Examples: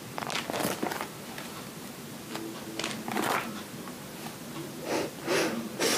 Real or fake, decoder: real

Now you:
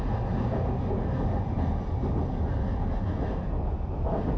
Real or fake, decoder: real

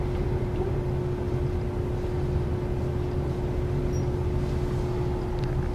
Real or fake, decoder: real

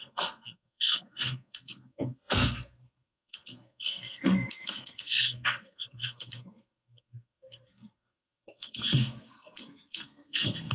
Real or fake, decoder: fake, codec, SNAC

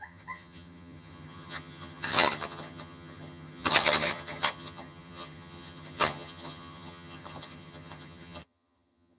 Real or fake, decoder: fake, vocoder, HiFi-GAN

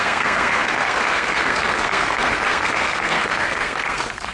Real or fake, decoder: fake, codec, SNAC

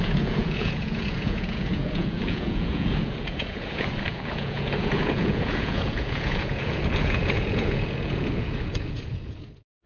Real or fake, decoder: fake, vocoder, Vocos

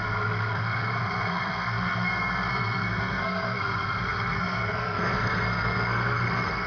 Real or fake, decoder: fake, codec, SNAC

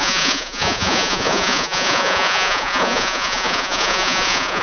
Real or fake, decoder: fake, vocoder, Vocos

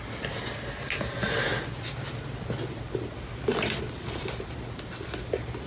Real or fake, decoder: real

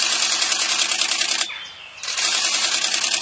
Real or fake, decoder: real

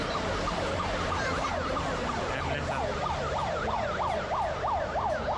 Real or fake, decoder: real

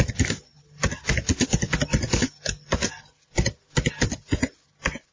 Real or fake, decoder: real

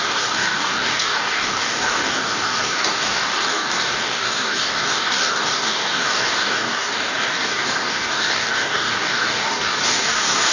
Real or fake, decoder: fake, codec, DAC